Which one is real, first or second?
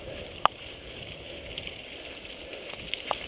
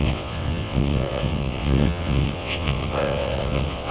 first